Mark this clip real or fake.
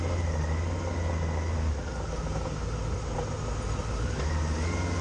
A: real